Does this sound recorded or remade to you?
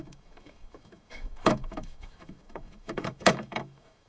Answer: remade